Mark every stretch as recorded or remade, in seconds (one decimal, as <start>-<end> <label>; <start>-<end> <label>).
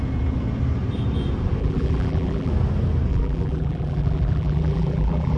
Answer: 0.0-1.6 recorded; 1.6-2.5 remade; 2.5-3.1 recorded; 3.1-5.4 remade